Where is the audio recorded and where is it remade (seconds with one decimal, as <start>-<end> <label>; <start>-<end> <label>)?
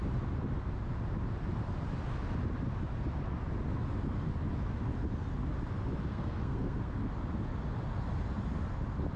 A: 0.0-6.1 recorded; 6.1-6.9 remade; 6.9-9.2 recorded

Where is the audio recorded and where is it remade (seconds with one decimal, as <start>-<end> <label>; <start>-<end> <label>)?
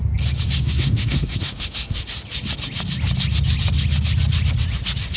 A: 0.0-0.6 recorded; 0.6-2.0 remade; 2.0-5.2 recorded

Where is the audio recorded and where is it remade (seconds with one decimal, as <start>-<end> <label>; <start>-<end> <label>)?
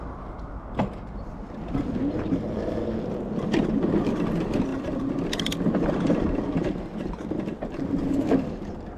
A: 0.0-9.0 recorded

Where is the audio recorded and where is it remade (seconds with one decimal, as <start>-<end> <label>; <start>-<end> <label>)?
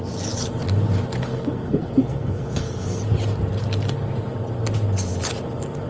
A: 0.0-1.3 recorded; 1.3-3.0 remade; 3.0-5.9 recorded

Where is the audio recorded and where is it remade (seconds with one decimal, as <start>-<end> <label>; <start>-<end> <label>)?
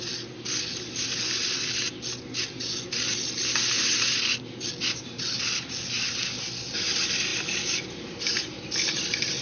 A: 0.0-9.4 recorded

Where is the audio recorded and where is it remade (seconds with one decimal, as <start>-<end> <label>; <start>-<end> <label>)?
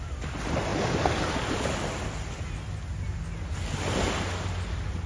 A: 0.0-5.1 recorded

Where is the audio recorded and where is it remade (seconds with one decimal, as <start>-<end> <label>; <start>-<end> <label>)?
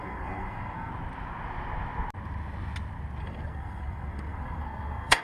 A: 0.0-0.9 remade; 0.9-3.2 recorded; 3.2-5.2 remade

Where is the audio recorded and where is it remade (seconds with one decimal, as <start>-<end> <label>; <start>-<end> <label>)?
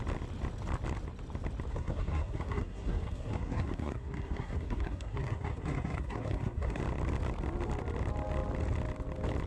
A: 0.0-1.7 recorded; 1.7-6.8 remade; 6.8-9.5 recorded